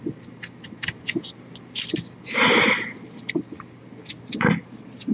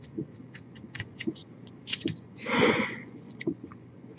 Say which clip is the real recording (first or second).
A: first